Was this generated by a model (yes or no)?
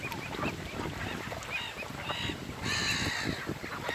no